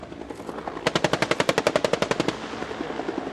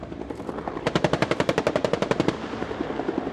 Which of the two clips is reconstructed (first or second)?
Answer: second